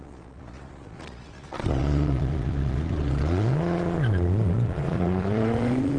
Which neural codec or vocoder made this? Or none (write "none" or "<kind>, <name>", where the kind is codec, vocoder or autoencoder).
vocoder, Vocos